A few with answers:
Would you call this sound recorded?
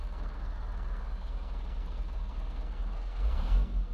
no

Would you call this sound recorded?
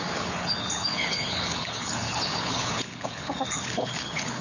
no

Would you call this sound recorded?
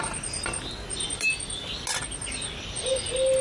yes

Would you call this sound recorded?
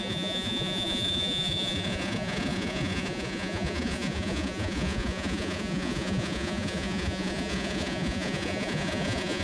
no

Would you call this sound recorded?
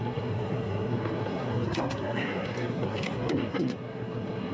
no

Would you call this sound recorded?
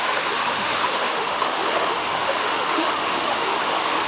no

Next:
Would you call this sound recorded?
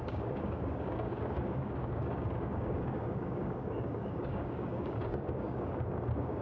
no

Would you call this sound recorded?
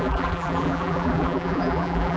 no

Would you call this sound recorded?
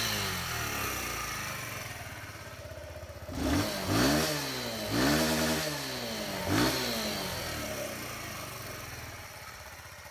yes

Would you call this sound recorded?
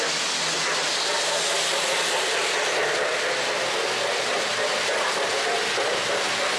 yes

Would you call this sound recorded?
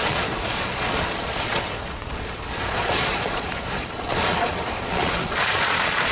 no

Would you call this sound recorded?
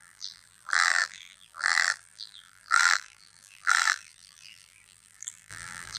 no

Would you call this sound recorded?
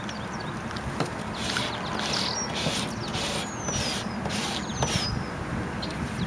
yes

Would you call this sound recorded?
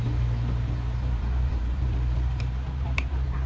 no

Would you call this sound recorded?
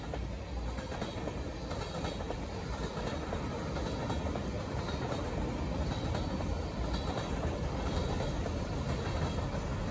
yes